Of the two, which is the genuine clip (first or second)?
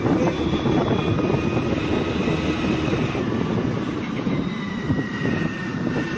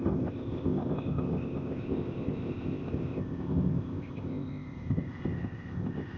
first